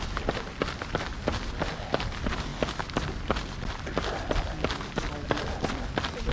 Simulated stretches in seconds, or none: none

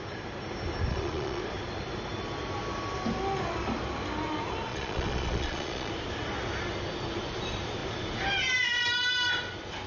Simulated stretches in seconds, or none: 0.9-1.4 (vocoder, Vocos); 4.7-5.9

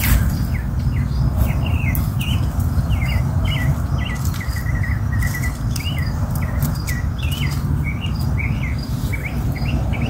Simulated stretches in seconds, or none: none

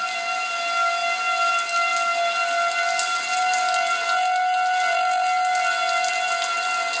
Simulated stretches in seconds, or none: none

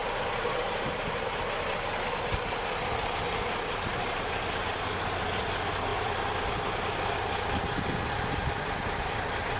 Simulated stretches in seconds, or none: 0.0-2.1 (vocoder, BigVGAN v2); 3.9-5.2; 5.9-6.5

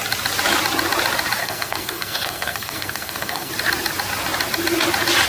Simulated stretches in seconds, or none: 1.4-3.5 (codec, SNAC)

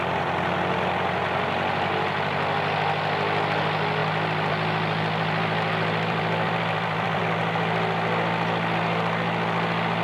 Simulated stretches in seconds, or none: 4.0-7.2 (vocoder, BigVGAN v2)

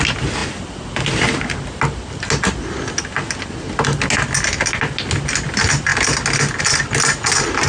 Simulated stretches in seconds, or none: none